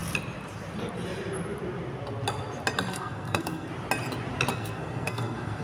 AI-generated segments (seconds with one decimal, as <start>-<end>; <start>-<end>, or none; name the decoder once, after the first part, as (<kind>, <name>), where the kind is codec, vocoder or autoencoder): 2.9-3.7 (codec, SNAC); 4.5-5.6

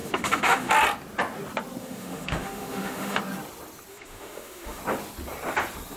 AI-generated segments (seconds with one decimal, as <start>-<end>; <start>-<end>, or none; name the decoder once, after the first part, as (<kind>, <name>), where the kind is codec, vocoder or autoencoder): 0.0-0.7 (autoencoder, DAC-VAE); 1.8-3.2; 3.9-4.8

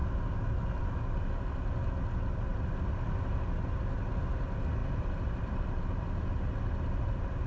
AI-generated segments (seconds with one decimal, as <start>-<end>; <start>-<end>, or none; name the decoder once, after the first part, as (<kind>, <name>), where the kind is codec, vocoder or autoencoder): 4.8-5.8 (vocoder, BigVGAN v2)

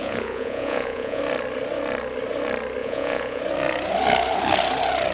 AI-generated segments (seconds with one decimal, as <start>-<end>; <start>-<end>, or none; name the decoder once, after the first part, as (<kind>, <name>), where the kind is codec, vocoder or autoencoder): 0.0-1.2 (vocoder, Vocos); 2.8-3.4

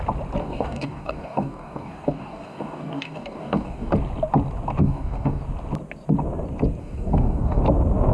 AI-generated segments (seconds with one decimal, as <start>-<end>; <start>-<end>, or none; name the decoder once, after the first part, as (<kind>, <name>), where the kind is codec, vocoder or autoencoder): 0.4-3.9 (codec, DAC); 4.8-5.4; 6.8-7.6

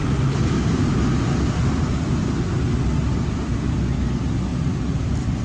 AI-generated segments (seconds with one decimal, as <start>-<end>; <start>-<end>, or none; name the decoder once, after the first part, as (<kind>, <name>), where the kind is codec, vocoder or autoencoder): 2.7-3.5 (vocoder, BigVGAN v2); 4.5-5.4